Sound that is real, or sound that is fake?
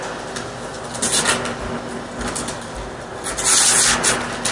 real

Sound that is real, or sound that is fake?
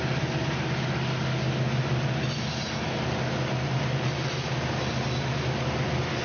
real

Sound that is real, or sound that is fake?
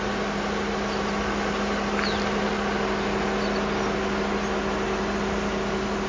real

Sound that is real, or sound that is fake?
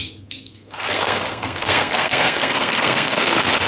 fake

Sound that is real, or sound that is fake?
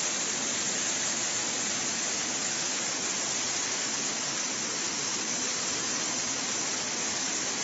real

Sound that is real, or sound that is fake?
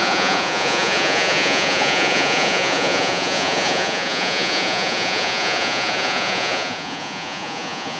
fake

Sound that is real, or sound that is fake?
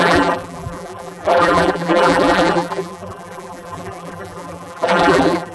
fake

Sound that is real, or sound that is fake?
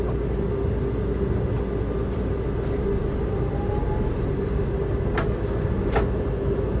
real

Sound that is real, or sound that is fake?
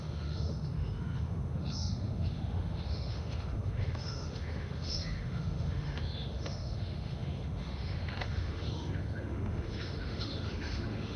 fake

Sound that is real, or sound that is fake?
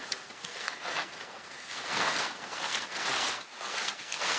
fake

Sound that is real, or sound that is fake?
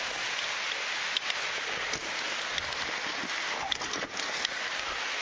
real